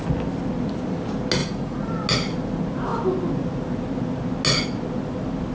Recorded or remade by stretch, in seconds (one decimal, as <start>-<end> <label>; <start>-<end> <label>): 0.0-1.4 recorded; 1.4-1.9 remade; 1.9-5.5 recorded